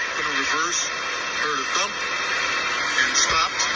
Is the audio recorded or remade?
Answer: recorded